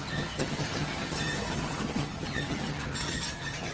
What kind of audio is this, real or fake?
fake